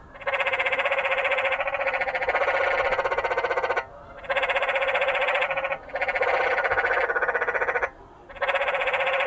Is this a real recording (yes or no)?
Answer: yes